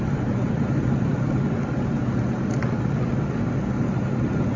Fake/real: real